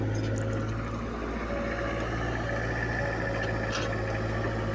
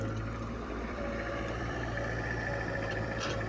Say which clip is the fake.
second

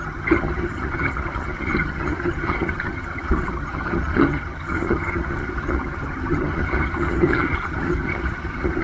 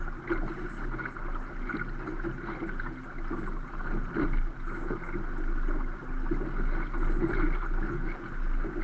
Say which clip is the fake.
first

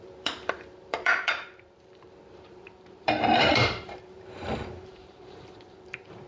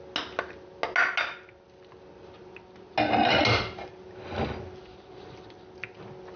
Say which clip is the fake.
first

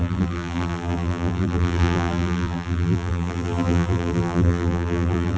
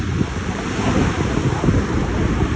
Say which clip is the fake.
first